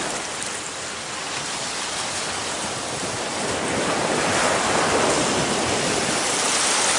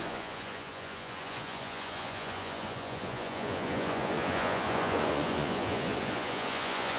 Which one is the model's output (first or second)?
second